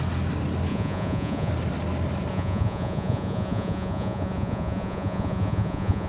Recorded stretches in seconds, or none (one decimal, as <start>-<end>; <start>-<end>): 0.0-0.7; 1.5-2.3